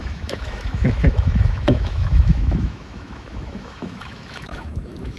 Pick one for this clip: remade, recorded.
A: remade